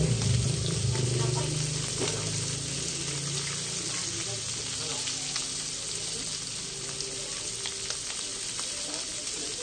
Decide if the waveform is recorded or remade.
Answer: recorded